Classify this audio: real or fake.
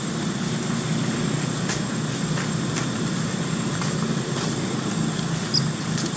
real